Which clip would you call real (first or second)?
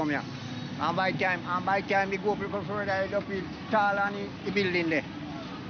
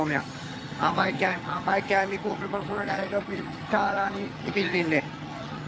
first